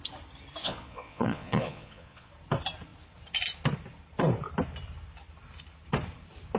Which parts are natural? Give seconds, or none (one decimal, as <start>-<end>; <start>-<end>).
0.0-0.6; 2.3-6.6